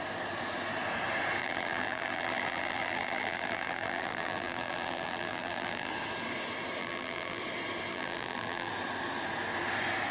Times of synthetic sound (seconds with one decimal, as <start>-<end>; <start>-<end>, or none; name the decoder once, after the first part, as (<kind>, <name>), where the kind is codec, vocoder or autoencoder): 1.4-5.9 (vocoder, BigVGAN v2); 6.8-7.4; 7.9-8.7